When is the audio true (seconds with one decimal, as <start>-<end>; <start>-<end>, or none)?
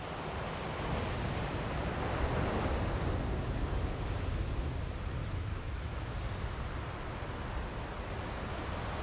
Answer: 0.0-5.2; 6.0-9.0